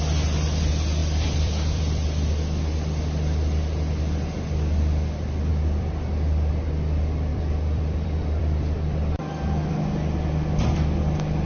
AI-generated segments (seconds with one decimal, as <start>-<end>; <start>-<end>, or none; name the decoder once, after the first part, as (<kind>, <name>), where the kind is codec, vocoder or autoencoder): 1.0-2.3 (vocoder, BigVGAN v2); 5.5-6.5; 7.3-9.2